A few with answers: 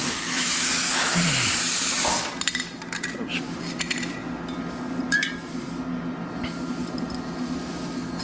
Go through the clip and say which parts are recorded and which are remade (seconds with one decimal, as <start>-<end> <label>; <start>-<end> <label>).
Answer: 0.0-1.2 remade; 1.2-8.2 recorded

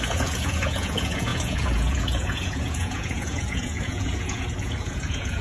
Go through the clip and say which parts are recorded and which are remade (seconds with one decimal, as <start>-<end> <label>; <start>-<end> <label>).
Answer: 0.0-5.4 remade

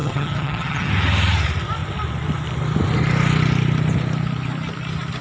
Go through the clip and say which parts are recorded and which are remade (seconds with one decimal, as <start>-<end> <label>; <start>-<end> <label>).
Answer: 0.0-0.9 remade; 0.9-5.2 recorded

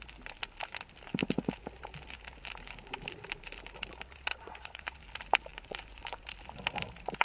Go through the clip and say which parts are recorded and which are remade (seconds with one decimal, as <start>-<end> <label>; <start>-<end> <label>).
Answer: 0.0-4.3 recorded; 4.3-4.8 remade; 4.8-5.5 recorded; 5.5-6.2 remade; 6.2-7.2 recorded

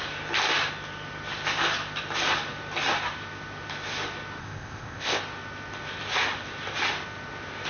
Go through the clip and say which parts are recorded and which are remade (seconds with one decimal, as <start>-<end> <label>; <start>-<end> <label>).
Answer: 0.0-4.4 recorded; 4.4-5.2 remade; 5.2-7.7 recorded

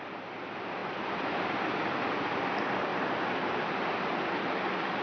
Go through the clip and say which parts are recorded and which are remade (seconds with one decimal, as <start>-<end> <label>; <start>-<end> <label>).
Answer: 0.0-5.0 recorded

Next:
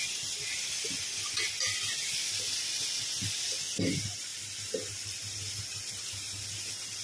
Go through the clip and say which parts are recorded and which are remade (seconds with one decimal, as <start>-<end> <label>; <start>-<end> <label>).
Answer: 0.0-4.3 recorded; 4.3-6.5 remade; 6.5-7.0 recorded

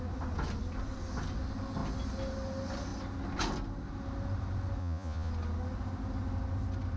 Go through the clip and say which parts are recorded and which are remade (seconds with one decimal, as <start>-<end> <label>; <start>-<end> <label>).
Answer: 0.0-4.8 recorded; 4.8-5.3 remade; 5.3-7.0 recorded